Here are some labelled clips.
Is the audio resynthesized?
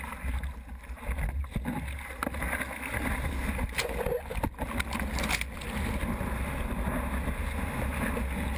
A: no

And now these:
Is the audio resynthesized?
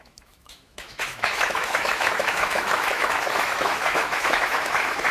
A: yes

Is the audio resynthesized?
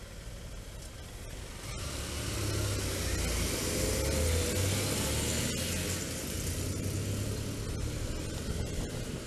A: no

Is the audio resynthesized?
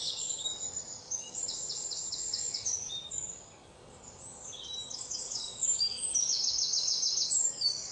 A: yes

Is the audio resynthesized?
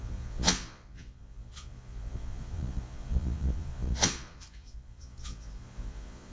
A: yes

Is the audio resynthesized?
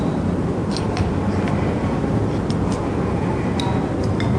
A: no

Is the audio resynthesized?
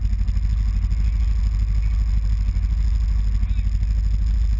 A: no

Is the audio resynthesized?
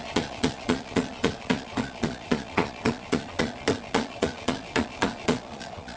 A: yes